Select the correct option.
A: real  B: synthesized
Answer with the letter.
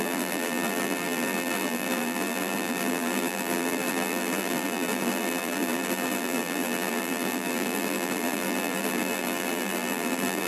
B